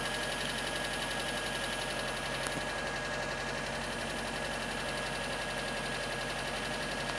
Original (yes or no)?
yes